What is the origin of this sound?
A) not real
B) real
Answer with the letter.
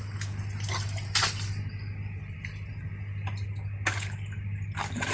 B